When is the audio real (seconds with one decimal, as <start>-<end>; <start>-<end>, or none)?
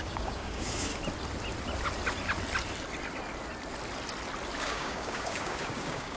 0.9-4.6